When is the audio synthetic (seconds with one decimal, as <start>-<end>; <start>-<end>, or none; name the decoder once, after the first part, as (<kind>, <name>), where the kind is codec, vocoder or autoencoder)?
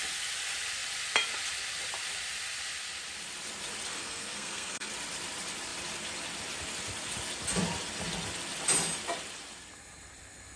3.9-4.9 (codec, SNAC)